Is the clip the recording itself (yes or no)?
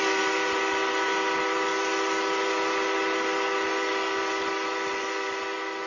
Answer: yes